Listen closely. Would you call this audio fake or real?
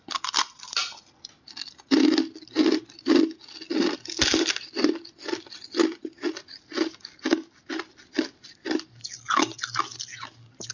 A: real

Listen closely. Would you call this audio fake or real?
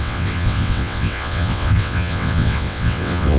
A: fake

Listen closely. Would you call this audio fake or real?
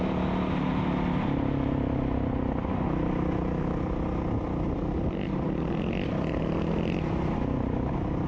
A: real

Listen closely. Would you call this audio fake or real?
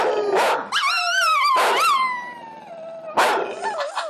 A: real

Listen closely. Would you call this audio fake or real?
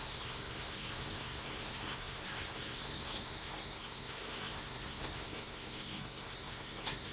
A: fake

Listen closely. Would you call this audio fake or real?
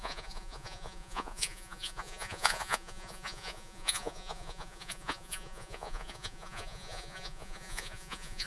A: fake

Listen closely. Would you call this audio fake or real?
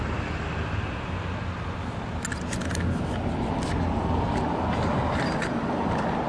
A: real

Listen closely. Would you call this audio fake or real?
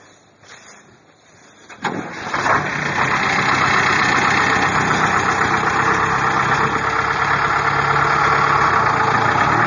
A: real